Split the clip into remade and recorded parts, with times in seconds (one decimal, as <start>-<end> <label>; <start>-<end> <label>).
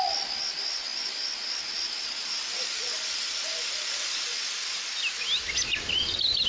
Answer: 0.0-6.5 recorded